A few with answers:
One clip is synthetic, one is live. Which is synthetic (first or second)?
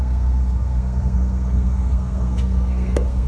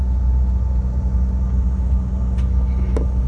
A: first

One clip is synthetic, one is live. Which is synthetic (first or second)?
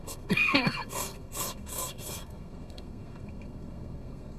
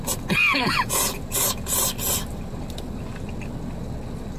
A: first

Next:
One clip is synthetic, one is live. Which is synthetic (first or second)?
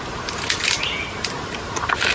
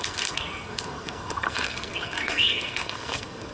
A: second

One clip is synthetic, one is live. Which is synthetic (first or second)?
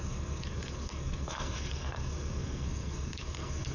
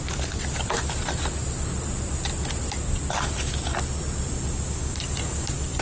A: first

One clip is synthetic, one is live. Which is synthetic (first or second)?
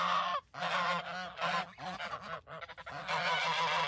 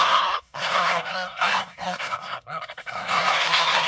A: second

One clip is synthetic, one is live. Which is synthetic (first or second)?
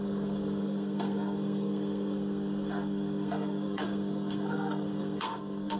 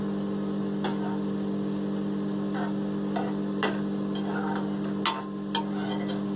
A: first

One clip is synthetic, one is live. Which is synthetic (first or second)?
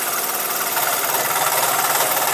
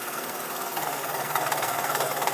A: second